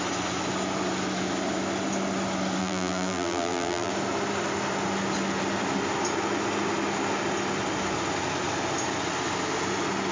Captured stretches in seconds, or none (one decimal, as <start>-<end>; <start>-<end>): 0.0-2.6; 3.9-10.1